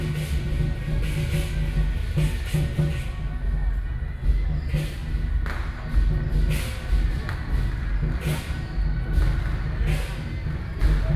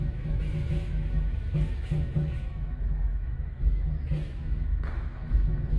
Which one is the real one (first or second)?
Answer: first